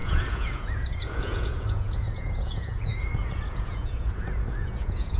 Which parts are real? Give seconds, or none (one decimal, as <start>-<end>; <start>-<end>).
none